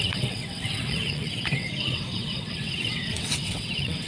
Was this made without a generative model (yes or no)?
no